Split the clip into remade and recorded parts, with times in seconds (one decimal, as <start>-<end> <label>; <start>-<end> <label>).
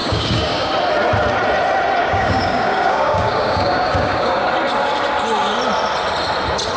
0.0-0.7 remade; 0.7-2.0 recorded; 2.0-4.5 remade; 4.5-6.8 recorded